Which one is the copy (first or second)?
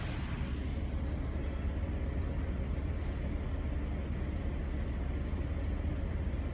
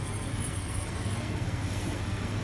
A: second